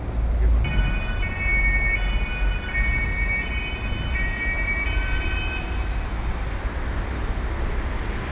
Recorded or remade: recorded